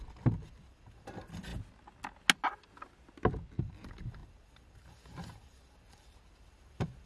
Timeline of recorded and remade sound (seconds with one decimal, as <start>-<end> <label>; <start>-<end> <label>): 0.0-1.5 remade; 1.5-3.6 recorded; 3.6-7.1 remade